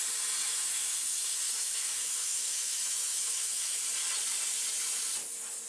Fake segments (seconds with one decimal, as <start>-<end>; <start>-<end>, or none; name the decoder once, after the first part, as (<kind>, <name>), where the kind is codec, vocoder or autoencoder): 0.4-3.8 (autoencoder, DAC-VAE)